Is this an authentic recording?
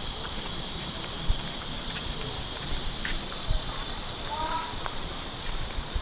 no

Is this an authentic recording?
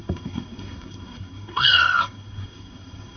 no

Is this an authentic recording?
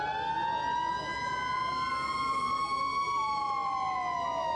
yes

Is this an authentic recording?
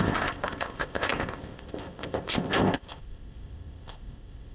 no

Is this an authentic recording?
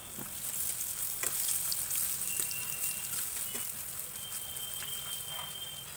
yes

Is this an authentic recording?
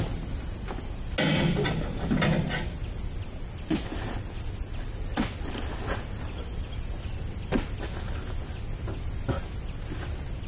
yes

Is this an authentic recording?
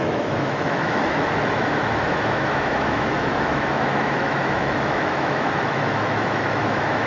no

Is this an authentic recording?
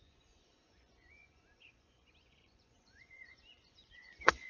no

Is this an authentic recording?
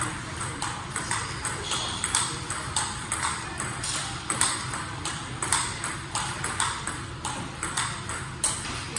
no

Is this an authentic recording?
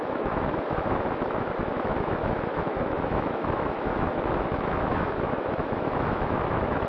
no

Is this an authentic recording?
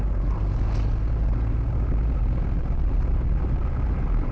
yes